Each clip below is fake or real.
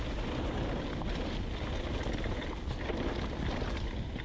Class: real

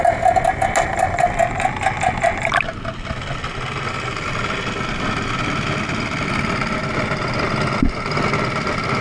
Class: real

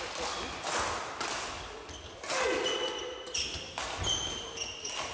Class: real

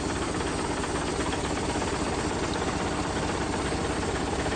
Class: real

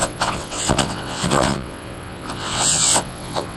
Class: fake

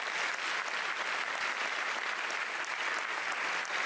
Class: real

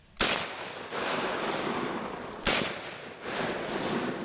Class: real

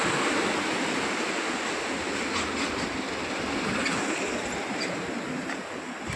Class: real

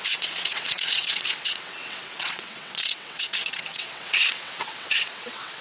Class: fake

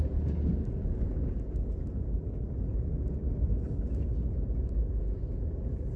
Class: real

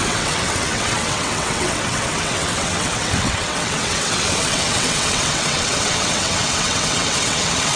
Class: fake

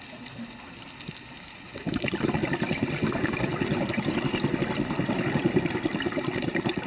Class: real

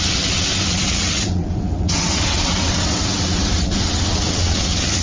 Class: fake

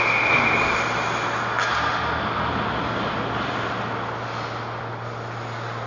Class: real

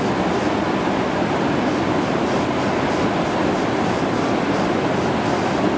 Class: real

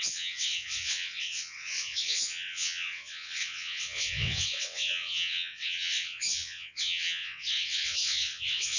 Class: fake